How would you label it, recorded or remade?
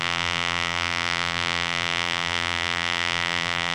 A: remade